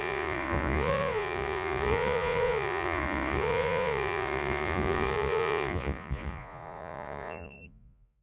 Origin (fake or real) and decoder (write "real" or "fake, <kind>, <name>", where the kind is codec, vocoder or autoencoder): fake, vocoder, Vocos